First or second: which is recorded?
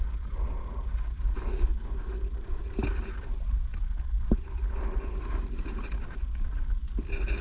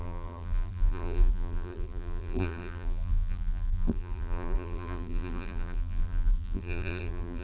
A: first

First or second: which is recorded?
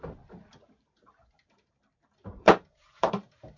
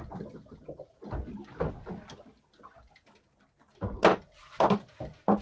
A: second